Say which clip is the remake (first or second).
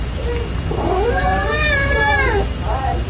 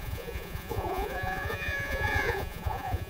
second